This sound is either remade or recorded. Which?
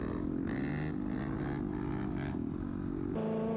recorded